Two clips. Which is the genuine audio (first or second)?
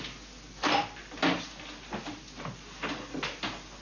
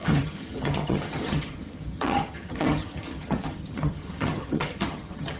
first